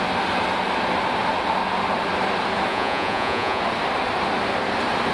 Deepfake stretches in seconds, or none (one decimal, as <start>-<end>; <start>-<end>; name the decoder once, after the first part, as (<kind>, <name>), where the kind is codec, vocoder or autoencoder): 2.7-3.6 (vocoder, Vocos)